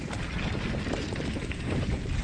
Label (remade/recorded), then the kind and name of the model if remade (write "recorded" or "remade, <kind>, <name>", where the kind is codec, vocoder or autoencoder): recorded